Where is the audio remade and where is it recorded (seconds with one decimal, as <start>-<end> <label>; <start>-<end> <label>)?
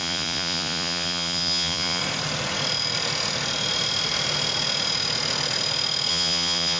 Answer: 0.0-2.0 remade; 2.0-6.1 recorded; 6.1-6.8 remade